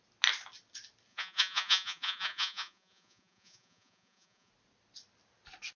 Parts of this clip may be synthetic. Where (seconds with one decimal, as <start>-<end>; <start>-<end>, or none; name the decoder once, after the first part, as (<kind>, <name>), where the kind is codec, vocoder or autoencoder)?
1.1-4.5 (vocoder, Vocos)